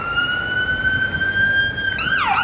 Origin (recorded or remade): recorded